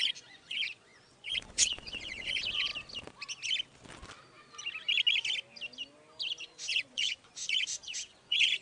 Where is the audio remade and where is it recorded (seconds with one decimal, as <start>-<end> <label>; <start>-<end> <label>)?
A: 0.0-2.7 remade; 2.7-6.4 recorded; 6.4-8.6 remade